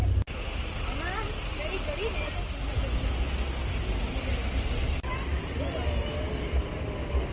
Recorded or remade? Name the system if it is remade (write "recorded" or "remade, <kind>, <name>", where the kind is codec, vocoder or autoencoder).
recorded